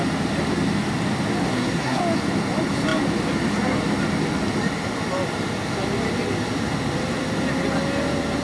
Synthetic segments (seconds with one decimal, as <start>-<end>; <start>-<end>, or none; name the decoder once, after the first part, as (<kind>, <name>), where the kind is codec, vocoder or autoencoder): 1.4-2.0 (codec, SNAC)